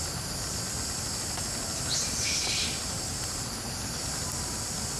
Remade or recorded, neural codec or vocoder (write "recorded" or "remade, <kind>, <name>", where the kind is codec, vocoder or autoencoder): recorded